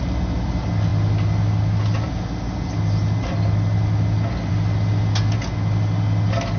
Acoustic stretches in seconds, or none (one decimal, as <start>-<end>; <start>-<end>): 0.0-6.6